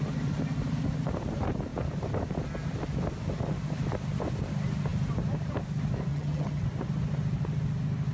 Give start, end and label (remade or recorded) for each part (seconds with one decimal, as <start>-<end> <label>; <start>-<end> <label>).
0.0-6.1 recorded; 6.1-6.6 remade; 6.6-8.1 recorded